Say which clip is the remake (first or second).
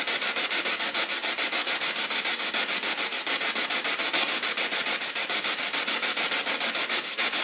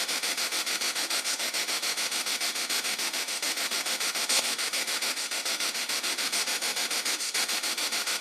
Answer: second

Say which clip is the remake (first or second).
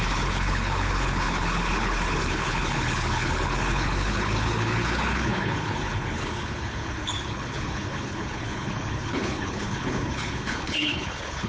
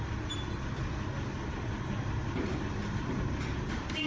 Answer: first